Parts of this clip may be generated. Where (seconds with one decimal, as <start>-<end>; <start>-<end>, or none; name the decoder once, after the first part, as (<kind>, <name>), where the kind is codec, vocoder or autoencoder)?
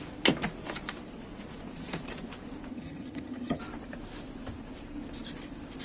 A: 2.7-3.6 (vocoder, HiFi-GAN)